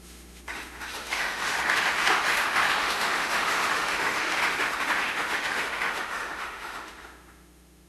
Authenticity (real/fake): fake